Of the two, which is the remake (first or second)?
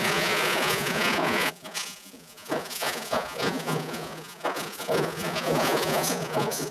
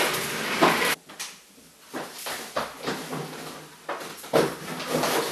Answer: first